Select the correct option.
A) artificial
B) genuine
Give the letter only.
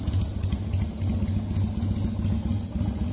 B